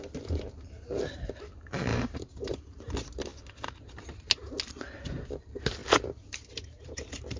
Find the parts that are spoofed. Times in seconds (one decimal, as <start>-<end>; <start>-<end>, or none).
1.9-2.8; 5.8-7.4